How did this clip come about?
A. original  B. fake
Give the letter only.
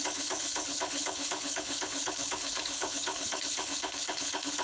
B